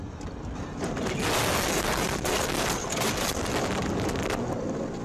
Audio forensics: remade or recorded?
recorded